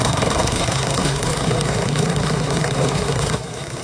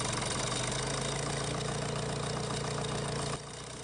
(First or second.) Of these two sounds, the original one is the second